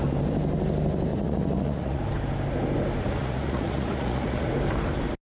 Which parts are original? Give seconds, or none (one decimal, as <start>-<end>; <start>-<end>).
0.0-1.1; 2.0-3.2; 4.5-5.3